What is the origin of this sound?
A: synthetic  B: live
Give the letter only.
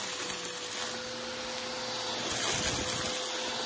B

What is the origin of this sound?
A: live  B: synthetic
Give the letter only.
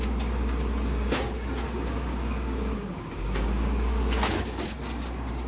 B